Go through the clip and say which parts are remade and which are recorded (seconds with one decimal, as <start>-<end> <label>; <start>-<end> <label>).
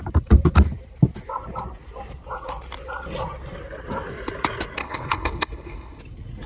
0.0-4.8 recorded; 4.8-6.0 remade; 6.0-6.5 recorded